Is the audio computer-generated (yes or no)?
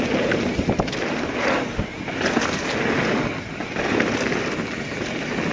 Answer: no